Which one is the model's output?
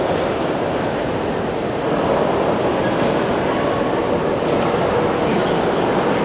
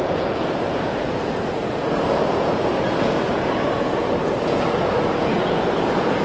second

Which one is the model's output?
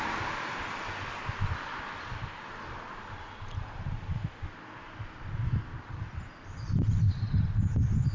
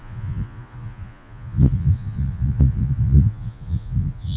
second